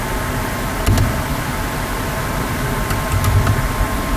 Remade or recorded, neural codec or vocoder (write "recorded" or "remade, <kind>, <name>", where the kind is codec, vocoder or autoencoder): recorded